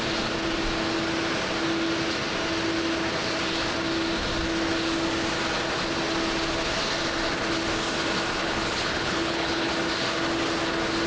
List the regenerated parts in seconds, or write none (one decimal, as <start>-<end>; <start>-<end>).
8.4-9.7